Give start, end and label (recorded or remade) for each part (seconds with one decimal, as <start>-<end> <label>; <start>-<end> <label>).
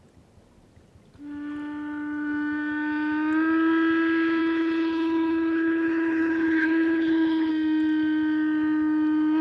0.0-4.4 recorded; 4.4-7.5 remade; 7.5-9.4 recorded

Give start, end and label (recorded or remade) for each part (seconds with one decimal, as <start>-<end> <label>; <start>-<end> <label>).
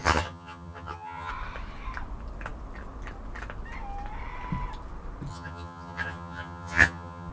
0.0-1.3 remade; 1.3-5.3 recorded; 5.3-7.3 remade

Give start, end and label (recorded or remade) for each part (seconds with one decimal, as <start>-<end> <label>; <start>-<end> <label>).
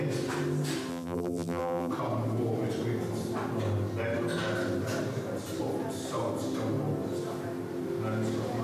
0.0-0.9 recorded; 0.9-1.9 remade; 1.9-8.6 recorded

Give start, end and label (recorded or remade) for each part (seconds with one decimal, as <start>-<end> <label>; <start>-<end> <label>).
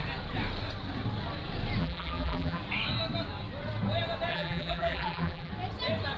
0.0-1.8 recorded; 1.8-2.6 remade; 2.6-4.3 recorded; 4.3-5.5 remade; 5.5-6.2 recorded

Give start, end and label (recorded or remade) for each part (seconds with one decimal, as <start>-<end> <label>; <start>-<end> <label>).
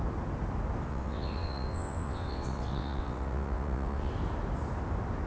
0.0-0.9 recorded; 0.9-4.1 remade; 4.1-5.3 recorded